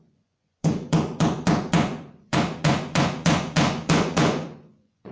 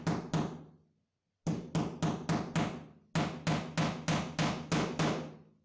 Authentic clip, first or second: second